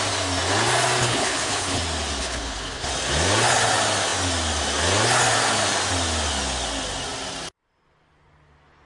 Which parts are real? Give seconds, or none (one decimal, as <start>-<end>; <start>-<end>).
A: 0.0-1.0; 1.8-2.2; 2.9-8.9